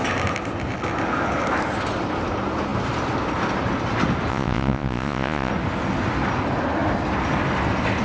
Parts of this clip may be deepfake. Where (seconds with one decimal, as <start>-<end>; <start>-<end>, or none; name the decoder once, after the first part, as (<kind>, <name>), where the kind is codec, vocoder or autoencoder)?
4.3-5.5 (vocoder, Vocos)